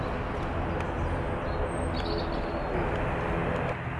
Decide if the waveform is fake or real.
real